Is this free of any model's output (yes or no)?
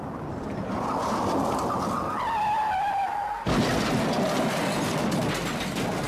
yes